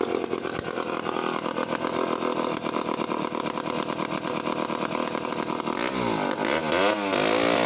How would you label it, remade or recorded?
recorded